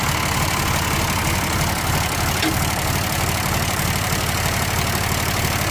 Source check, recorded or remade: recorded